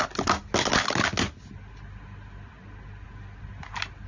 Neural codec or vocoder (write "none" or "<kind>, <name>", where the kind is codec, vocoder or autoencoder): none